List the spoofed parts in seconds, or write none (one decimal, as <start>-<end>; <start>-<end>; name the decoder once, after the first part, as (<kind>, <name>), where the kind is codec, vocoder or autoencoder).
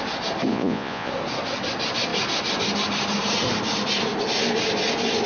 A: 0.5-1.1 (vocoder, Vocos)